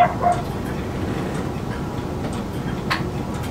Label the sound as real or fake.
real